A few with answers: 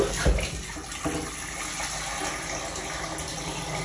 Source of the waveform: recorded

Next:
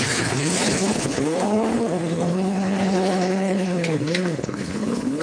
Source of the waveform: remade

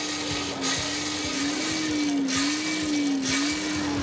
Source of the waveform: recorded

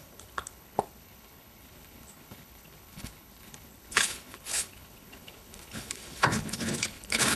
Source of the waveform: remade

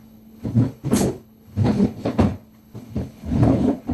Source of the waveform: remade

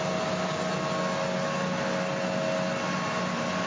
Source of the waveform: recorded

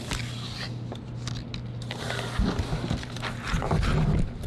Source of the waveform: recorded